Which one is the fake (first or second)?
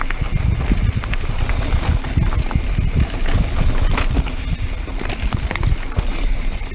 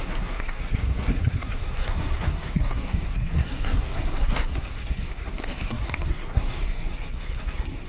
second